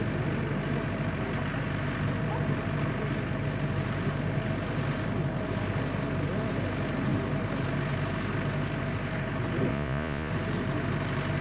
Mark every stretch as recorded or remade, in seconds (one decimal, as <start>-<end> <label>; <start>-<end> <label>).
0.0-9.7 recorded; 9.7-10.3 remade; 10.3-11.4 recorded